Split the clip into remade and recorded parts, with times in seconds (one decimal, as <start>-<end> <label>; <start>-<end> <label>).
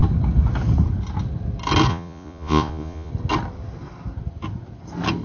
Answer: 0.0-1.9 recorded; 1.9-3.1 remade; 3.1-5.2 recorded